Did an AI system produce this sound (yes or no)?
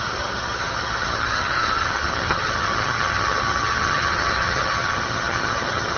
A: yes